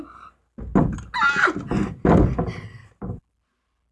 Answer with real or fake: real